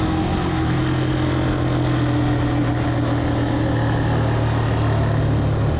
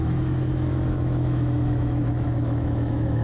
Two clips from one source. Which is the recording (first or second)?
first